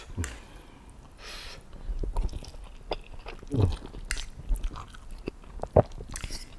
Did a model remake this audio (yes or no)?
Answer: no